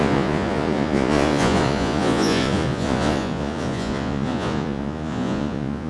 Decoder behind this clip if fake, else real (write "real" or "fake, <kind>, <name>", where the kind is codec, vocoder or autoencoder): fake, vocoder, Vocos